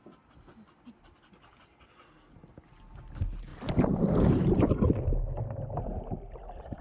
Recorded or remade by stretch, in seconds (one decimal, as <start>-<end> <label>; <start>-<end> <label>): 0.0-6.8 recorded